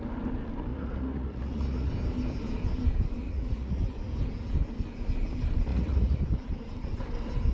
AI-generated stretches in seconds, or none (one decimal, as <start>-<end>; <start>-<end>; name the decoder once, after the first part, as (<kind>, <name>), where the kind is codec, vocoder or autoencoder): 0.7-1.9 (vocoder, Vocos); 3.2-3.8; 5.7-6.2